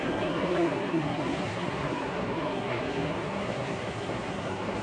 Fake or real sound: fake